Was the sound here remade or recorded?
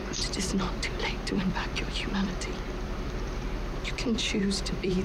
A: remade